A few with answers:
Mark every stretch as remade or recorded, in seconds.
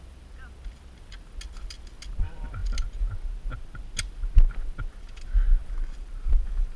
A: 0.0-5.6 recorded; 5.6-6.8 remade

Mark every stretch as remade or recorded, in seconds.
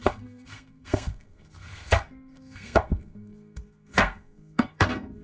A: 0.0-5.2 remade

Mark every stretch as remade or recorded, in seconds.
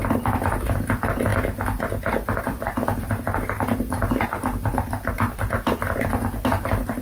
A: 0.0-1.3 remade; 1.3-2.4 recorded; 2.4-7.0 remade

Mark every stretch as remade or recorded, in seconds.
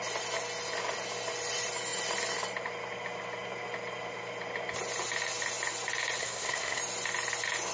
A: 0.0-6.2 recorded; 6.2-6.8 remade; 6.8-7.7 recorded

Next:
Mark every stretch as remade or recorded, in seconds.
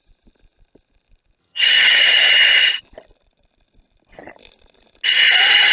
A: 0.0-1.4 recorded; 1.4-2.2 remade; 2.2-5.7 recorded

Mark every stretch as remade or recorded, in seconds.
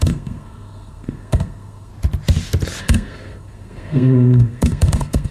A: 0.0-1.9 remade; 1.9-2.8 recorded; 2.8-5.3 remade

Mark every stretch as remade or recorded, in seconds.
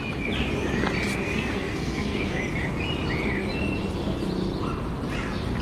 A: 0.0-1.1 recorded; 1.1-2.4 remade; 2.4-5.6 recorded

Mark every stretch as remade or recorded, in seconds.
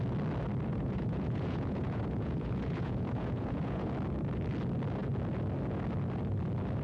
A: 0.0-0.7 recorded; 0.7-3.9 remade; 3.9-6.8 recorded